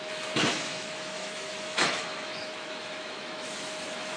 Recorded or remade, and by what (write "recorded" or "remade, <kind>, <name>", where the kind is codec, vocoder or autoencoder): remade, autoencoder, DAC-VAE